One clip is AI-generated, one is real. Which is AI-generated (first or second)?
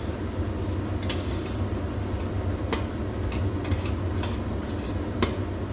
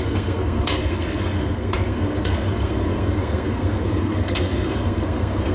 second